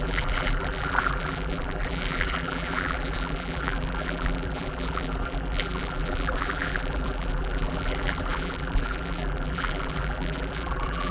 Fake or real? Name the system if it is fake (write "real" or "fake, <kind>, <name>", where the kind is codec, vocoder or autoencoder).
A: fake, vocoder, BigVGAN v2